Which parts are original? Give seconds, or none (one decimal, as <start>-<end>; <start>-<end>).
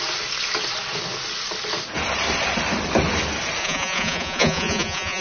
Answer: 0.0-3.6